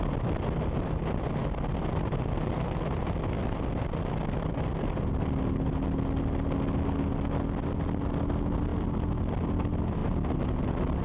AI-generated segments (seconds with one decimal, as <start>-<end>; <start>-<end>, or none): none